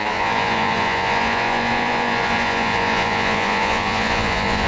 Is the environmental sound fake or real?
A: fake